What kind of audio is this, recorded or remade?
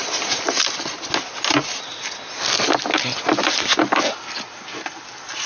recorded